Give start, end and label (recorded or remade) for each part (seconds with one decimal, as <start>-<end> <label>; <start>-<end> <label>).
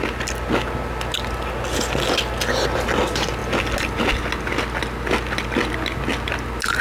0.0-6.8 recorded